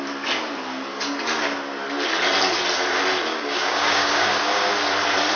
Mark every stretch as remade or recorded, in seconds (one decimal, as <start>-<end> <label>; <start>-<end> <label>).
0.0-3.3 recorded; 3.3-4.7 remade; 4.7-5.3 recorded